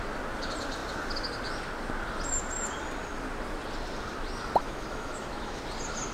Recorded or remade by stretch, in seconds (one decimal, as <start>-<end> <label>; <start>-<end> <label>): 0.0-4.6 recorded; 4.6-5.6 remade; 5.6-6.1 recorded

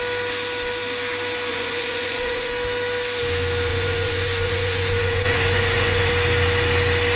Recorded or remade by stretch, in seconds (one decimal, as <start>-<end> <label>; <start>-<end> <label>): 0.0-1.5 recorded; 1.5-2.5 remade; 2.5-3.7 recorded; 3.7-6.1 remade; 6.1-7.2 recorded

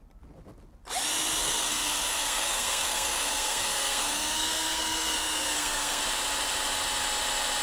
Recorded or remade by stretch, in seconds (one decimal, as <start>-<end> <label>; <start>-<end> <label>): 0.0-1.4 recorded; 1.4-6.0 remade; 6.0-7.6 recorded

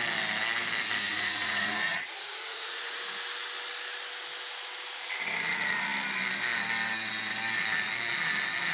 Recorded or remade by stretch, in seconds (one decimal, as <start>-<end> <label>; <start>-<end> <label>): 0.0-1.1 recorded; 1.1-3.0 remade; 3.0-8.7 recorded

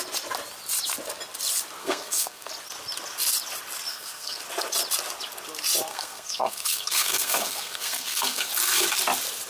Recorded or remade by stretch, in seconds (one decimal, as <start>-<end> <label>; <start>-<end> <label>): 0.0-1.8 recorded; 1.8-2.5 remade; 2.5-3.9 recorded; 3.9-4.4 remade; 4.4-5.9 recorded; 5.9-8.5 remade; 8.5-9.5 recorded

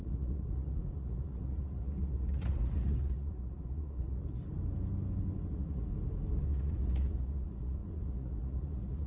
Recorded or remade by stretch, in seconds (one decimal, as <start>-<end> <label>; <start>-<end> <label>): 0.0-4.4 remade; 4.4-5.5 recorded; 5.5-5.9 remade; 5.9-6.5 recorded; 6.5-9.1 remade

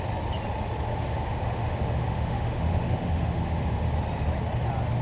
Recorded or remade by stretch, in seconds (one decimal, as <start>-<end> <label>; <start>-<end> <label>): 0.0-0.9 recorded; 0.9-3.9 remade; 3.9-5.0 recorded

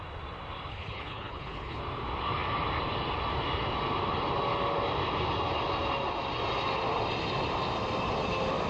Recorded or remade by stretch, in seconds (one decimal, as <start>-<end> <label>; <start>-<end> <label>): 0.0-0.7 recorded; 0.7-1.8 remade; 1.8-8.7 recorded